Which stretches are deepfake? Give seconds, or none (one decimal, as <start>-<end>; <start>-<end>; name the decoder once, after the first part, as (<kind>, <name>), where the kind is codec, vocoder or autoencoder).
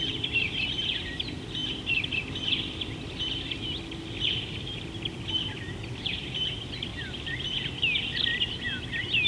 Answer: none